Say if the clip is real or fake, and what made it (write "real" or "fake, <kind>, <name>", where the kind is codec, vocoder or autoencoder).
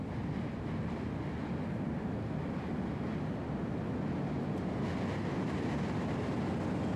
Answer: real